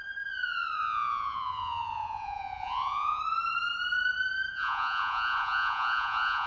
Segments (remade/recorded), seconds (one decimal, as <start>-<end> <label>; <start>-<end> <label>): 0.0-0.8 recorded; 0.8-3.2 remade; 3.2-4.5 recorded; 4.5-6.5 remade